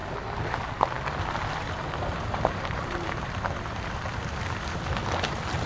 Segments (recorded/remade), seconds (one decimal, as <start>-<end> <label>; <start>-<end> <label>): 0.0-1.5 recorded; 1.5-4.9 remade; 4.9-5.7 recorded